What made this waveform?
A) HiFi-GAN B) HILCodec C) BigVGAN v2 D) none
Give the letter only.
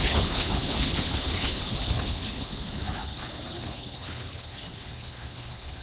B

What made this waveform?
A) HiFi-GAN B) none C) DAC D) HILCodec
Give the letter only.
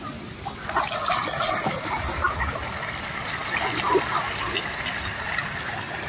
B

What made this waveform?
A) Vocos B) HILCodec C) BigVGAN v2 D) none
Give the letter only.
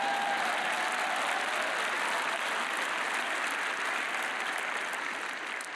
D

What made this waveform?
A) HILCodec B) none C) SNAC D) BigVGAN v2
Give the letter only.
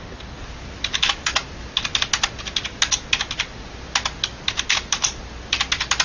B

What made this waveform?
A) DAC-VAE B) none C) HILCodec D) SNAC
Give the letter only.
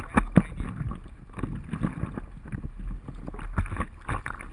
B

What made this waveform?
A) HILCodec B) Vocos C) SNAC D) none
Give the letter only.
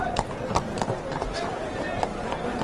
D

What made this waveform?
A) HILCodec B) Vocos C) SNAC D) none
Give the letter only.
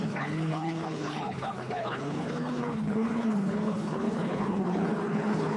A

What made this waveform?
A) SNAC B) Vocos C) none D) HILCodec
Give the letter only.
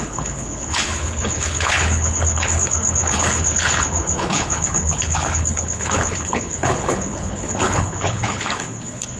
D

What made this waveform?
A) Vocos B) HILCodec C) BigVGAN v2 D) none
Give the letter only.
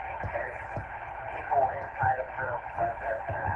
B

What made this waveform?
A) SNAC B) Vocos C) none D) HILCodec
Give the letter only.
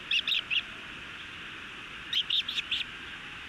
C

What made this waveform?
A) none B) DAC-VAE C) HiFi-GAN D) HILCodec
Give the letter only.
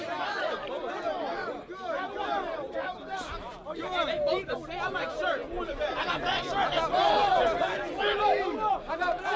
A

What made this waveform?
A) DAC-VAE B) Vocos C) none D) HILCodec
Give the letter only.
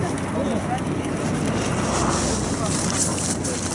C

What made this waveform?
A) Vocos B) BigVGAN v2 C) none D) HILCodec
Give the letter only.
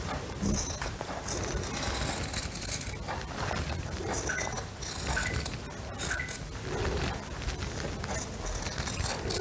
C